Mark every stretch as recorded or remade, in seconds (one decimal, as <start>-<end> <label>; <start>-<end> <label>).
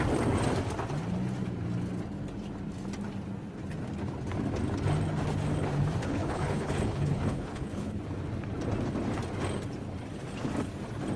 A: 0.0-6.0 recorded; 6.0-8.0 remade; 8.0-11.2 recorded